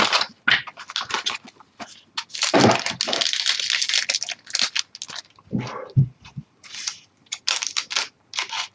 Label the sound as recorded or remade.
recorded